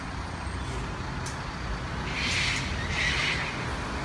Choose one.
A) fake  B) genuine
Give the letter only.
B